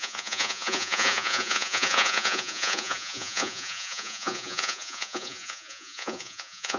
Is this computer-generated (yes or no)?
yes